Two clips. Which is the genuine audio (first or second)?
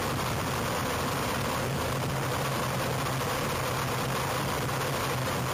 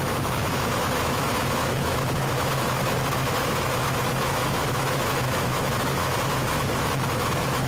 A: first